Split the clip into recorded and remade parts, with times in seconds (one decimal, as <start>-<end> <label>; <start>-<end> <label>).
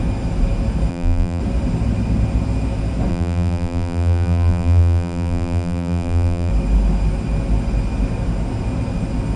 0.0-0.9 recorded; 0.9-1.4 remade; 1.4-3.1 recorded; 3.1-6.5 remade; 6.5-9.4 recorded